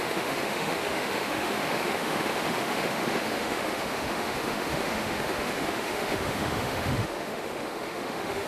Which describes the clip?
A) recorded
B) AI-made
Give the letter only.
B